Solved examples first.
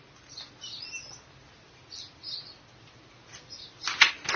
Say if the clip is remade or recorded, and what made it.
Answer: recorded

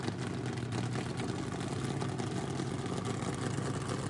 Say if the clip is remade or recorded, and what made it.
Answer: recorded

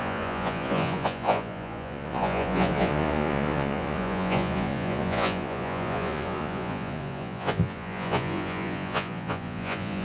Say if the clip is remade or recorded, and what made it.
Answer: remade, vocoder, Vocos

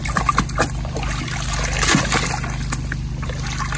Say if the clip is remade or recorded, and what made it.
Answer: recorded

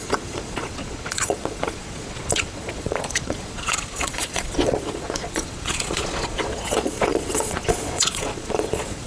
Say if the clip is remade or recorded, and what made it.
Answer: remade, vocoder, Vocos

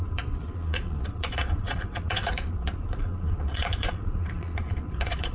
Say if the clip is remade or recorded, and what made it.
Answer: remade, vocoder, Vocos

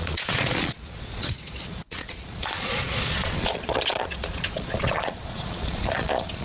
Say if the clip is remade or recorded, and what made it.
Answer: remade, vocoder, Vocos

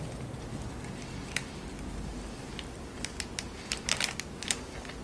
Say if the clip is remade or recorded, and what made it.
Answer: recorded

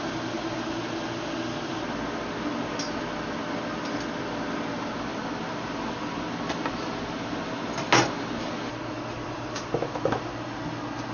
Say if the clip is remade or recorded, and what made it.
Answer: recorded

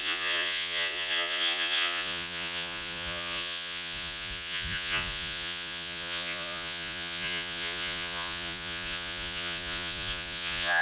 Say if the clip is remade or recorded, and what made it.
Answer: remade, vocoder, Vocos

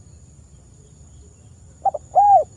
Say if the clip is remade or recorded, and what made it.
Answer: recorded